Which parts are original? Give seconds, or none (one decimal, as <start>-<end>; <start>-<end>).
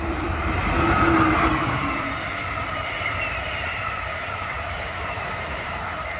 0.6-1.5